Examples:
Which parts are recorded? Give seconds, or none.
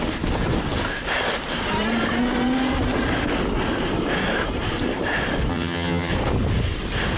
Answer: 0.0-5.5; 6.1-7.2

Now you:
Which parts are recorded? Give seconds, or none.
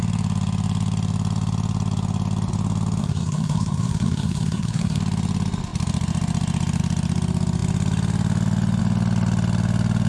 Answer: 0.0-3.0; 5.0-10.1